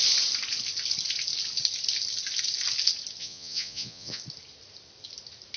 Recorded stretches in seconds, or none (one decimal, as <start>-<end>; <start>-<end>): 0.0-3.2; 4.2-5.6